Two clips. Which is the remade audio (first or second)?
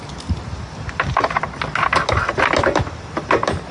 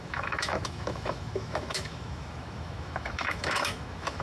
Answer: second